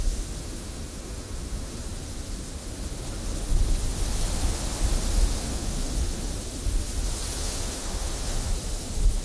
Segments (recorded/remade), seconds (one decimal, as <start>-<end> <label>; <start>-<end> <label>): 0.0-0.4 recorded; 0.4-1.9 remade; 1.9-5.5 recorded; 5.5-6.3 remade; 6.3-7.4 recorded; 7.4-8.5 remade; 8.5-9.2 recorded